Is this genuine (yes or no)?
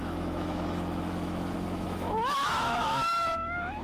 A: no